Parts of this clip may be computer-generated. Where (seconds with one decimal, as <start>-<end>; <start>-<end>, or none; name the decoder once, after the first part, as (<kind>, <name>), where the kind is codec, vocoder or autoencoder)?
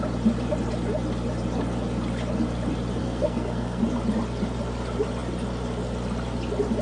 3.0-3.8 (codec, SNAC)